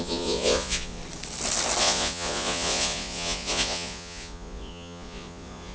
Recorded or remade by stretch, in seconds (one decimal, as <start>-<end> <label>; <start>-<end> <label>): 0.0-1.0 remade; 1.0-1.8 recorded; 1.8-5.7 remade